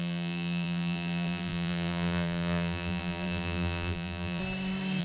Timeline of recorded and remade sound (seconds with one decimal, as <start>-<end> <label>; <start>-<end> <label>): 0.0-4.4 remade; 4.4-5.0 recorded